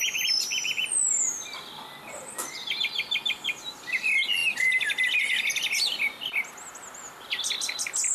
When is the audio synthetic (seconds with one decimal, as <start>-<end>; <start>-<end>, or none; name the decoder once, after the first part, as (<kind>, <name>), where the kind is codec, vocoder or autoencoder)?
none